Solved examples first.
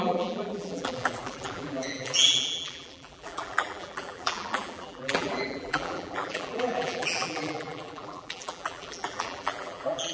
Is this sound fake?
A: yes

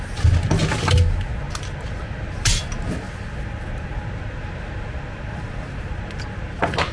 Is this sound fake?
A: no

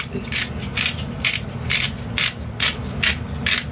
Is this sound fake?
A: no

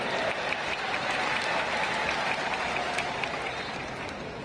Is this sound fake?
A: yes